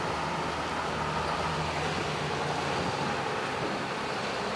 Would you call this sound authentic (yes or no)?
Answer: yes